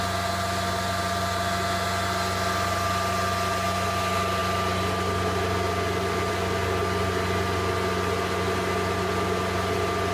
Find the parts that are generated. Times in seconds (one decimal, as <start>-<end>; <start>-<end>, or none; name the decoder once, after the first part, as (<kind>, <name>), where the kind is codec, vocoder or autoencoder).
none